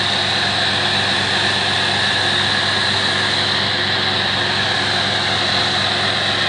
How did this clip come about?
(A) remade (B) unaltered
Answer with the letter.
B